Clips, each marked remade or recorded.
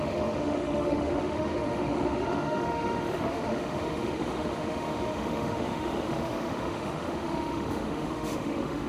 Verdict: remade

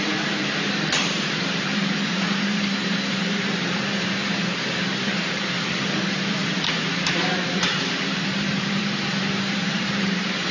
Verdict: remade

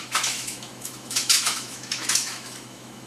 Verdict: remade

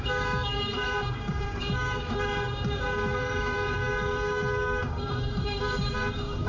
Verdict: remade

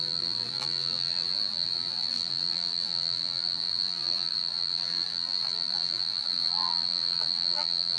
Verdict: remade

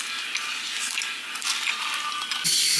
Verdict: recorded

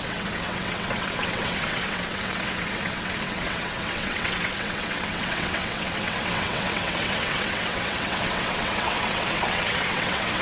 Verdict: remade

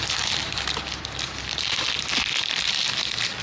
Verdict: recorded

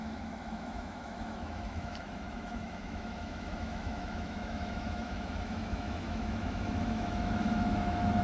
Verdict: remade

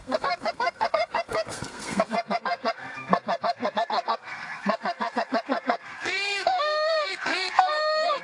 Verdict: remade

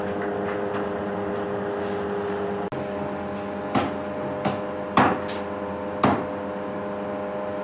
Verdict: recorded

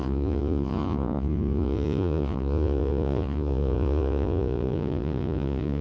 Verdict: remade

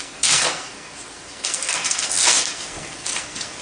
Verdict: remade